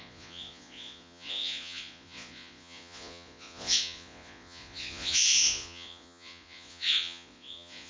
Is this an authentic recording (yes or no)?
no